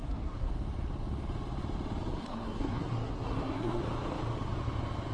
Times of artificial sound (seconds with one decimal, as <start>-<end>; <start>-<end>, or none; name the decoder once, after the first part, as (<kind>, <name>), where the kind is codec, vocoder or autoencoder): 0.0-0.5 (codec, SNAC); 2.1-3.8